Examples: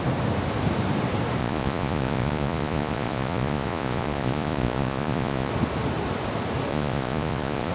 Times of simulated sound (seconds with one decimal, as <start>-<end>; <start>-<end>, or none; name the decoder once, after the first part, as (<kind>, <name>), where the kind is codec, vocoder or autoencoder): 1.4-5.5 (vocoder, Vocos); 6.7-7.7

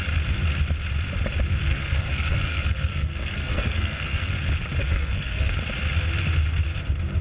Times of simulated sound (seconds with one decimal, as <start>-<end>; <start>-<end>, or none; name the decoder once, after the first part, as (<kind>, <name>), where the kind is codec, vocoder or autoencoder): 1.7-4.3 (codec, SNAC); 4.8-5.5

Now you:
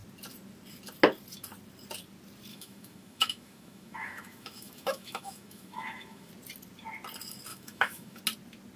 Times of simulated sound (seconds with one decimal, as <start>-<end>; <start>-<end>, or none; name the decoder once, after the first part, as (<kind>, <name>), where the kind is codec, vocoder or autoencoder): 2.5-6.3 (autoencoder, DAC-VAE); 7.5-8.2

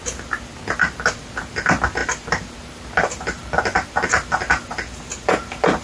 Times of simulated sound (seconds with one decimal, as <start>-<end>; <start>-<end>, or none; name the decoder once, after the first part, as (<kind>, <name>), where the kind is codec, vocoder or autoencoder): none